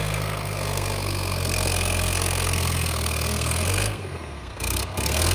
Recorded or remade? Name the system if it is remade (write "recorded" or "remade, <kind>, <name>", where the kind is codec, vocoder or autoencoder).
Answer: remade, codec, SNAC